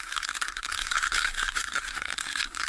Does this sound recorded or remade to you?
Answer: remade